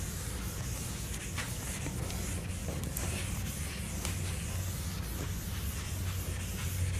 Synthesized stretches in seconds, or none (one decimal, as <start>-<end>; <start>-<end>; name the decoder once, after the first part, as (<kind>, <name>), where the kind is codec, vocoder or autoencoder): none

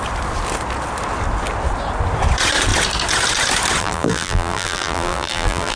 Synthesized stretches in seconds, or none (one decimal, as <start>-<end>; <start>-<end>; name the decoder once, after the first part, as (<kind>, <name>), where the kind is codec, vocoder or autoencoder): 3.8-5.8 (vocoder, BigVGAN v2)

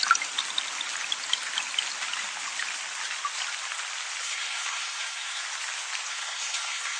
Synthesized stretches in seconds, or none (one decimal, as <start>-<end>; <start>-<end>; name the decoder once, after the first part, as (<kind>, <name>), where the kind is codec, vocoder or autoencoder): 4.2-5.4 (codec, SNAC); 6.1-7.0

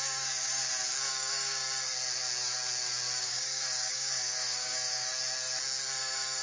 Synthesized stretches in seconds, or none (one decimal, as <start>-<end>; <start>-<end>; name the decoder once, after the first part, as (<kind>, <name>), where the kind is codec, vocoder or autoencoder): 0.0-0.6 (codec, DAC); 1.1-1.6; 3.2-5.1; 6.0-6.4